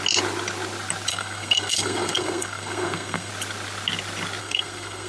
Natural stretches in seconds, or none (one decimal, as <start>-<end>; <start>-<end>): 0.0-1.1; 3.3-4.4